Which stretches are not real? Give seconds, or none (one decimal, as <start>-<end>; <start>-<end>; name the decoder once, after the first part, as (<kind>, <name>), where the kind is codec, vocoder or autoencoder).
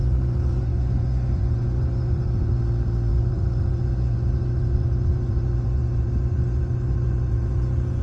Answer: 0.0-2.6 (vocoder, Vocos); 3.1-8.0